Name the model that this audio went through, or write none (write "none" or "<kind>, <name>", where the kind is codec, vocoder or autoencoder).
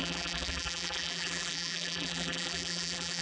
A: vocoder, BigVGAN v2